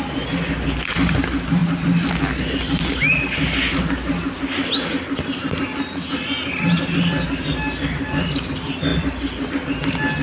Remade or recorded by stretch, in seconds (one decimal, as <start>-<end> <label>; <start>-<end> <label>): 0.0-10.2 recorded